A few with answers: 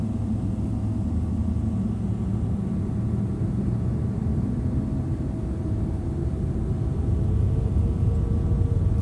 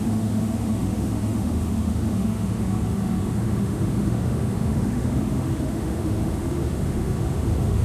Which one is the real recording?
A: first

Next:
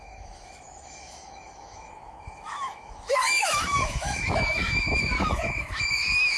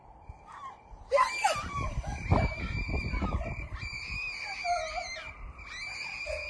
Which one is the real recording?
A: second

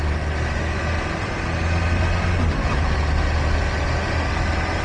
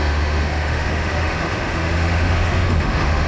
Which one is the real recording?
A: first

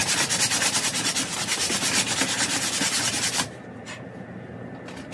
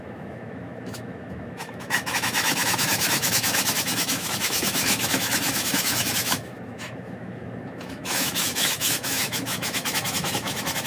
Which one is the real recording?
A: first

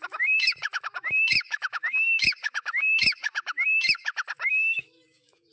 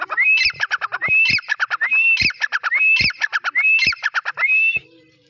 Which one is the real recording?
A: second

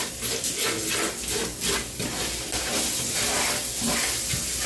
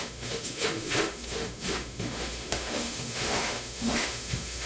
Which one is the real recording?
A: first